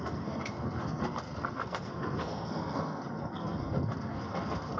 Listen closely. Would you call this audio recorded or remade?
remade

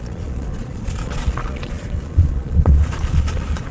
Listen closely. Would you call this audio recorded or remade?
remade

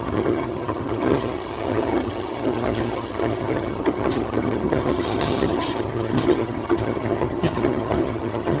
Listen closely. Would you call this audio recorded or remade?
remade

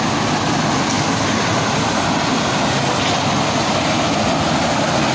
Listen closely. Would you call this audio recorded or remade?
recorded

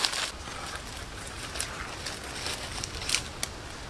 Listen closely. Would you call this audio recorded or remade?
recorded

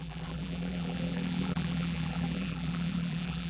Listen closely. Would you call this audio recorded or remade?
remade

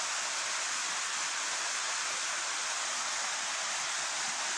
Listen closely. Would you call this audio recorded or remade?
recorded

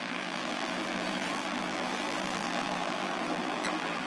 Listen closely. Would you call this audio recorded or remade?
remade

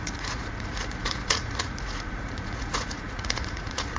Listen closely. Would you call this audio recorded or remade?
remade